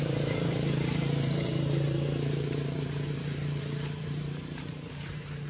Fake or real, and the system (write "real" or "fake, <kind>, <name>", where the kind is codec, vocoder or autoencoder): fake, vocoder, BigVGAN v2